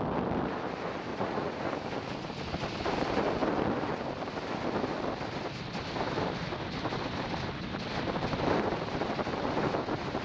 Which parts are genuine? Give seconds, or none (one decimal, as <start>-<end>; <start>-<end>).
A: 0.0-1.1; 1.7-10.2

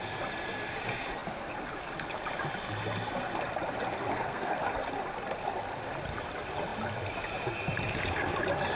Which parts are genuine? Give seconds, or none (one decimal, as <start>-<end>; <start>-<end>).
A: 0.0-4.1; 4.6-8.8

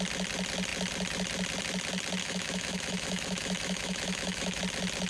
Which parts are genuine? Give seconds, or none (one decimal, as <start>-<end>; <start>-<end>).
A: 0.0-2.2; 4.6-5.1

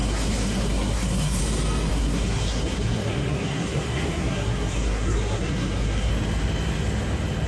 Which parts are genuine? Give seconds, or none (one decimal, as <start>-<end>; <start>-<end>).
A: 1.4-1.9; 6.1-7.5